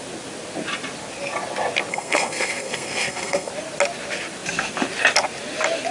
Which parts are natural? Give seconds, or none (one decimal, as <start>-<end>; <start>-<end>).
0.0-1.9; 3.5-5.9